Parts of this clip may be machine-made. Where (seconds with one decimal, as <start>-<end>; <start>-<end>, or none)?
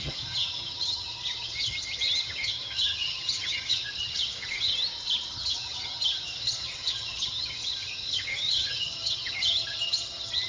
0.0-4.7; 5.3-10.5